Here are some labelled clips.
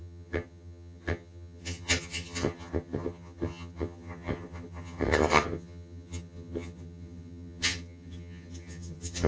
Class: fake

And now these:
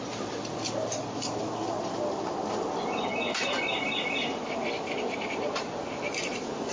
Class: real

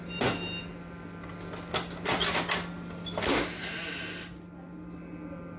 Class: real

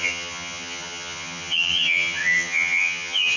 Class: fake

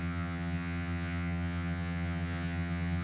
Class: fake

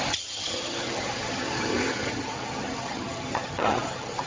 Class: fake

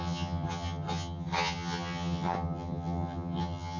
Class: fake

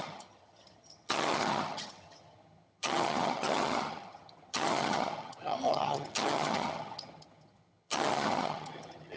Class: fake